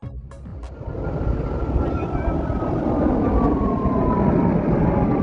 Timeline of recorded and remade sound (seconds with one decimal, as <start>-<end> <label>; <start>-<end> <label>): 0.0-5.2 recorded